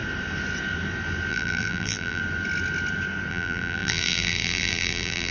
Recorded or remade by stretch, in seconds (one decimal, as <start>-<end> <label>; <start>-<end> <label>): 0.0-1.3 recorded; 1.3-2.2 remade; 2.2-3.3 recorded; 3.3-5.3 remade